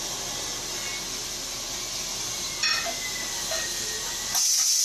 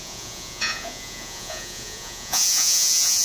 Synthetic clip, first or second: second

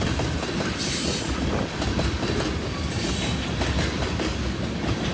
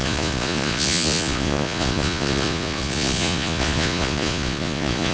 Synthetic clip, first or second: second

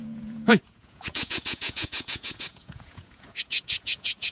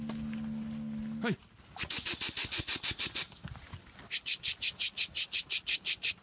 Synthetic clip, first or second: first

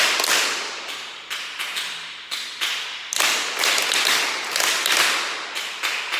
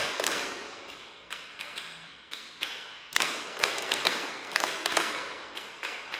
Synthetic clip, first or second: second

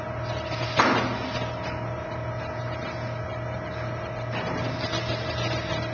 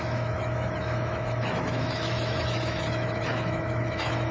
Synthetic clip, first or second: second